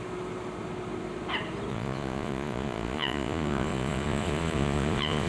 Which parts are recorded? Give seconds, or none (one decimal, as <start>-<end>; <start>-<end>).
0.0-1.7